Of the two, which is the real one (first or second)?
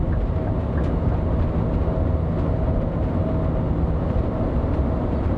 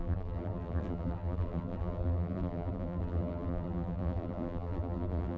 first